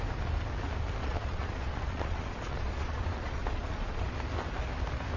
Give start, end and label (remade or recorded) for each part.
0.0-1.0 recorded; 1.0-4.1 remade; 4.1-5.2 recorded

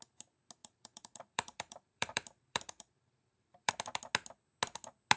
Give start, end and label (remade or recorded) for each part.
0.0-0.6 recorded; 0.6-3.7 remade; 3.7-5.2 recorded

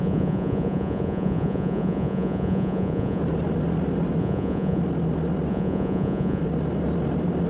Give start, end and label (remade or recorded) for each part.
0.0-3.2 remade; 3.2-4.2 recorded; 4.2-4.8 remade; 4.8-5.5 recorded; 5.5-6.4 remade; 6.4-7.5 recorded

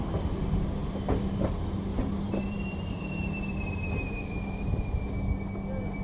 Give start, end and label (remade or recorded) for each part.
0.0-1.9 recorded; 1.9-5.1 remade; 5.1-6.0 recorded

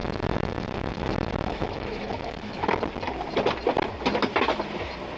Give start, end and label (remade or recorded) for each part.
0.0-2.8 remade; 2.8-5.2 recorded